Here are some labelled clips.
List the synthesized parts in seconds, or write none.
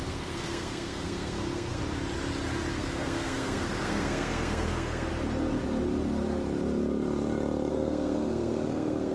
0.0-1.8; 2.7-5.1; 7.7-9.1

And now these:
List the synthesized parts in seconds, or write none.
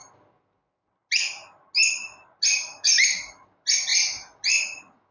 none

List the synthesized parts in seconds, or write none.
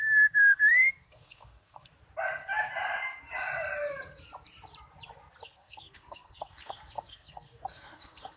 0.0-1.9; 5.4-8.4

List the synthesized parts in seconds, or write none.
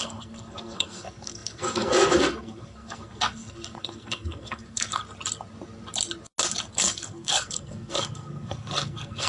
0.0-5.0; 6.7-9.3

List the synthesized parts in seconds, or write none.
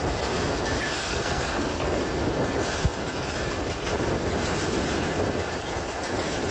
1.0-2.0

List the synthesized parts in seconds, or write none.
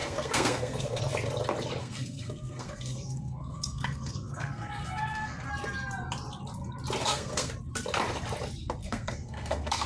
0.0-1.0; 1.8-5.5; 7.0-7.5; 8.8-9.9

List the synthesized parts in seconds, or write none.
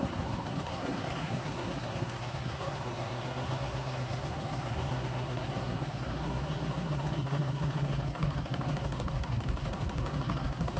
0.0-10.8